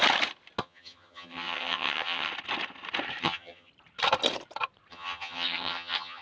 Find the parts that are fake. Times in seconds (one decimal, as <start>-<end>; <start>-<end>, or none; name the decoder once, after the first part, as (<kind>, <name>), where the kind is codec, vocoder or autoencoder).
0.6-2.3 (vocoder, HiFi-GAN); 3.2-3.7; 4.9-6.2